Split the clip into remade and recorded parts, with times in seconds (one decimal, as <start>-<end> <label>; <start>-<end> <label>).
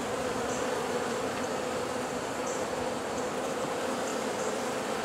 0.0-5.0 recorded